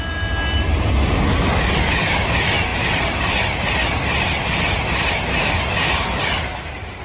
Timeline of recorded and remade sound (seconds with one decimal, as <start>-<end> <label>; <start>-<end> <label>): 0.0-7.0 recorded